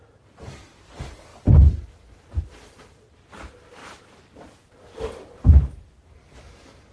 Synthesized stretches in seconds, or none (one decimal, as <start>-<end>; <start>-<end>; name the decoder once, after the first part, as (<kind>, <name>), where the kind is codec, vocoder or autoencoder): 3.8-6.4 (vocoder, BigVGAN v2)